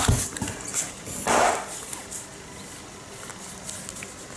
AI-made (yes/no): no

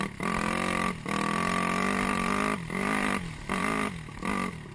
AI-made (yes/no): no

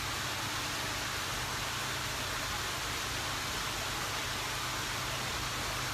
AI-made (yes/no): no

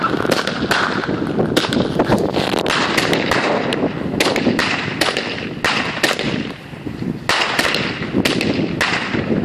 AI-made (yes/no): no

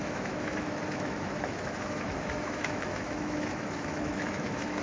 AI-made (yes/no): yes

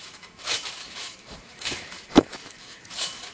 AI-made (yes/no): yes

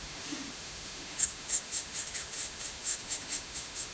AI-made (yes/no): yes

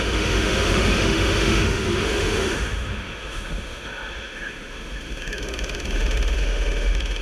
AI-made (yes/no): yes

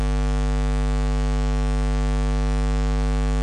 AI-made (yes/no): yes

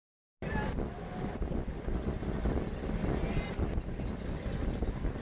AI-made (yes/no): no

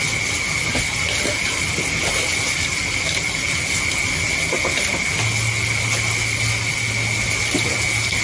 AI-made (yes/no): no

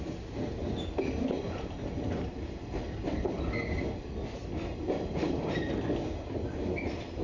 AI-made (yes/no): no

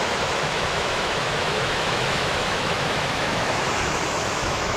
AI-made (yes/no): yes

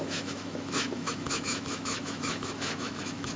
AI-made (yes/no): yes